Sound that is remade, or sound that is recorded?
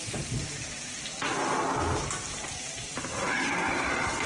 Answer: recorded